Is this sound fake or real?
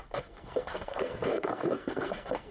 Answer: fake